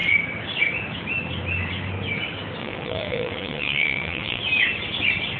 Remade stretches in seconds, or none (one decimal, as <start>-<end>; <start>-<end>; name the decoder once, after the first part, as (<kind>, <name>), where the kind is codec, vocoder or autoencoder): 2.6-4.4 (vocoder, WaveNeXt)